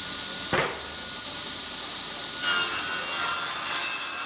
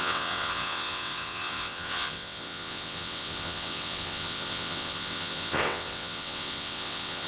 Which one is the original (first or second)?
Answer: first